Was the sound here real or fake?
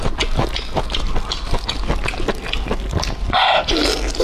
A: real